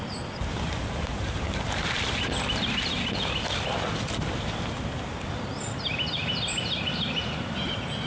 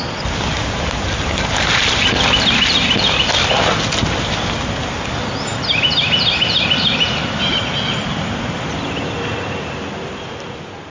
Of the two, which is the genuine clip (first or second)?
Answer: second